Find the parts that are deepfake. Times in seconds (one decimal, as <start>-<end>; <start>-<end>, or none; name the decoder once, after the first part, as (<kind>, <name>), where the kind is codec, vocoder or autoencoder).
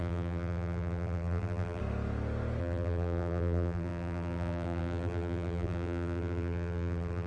0.0-1.8 (vocoder, BigVGAN v2); 2.6-7.3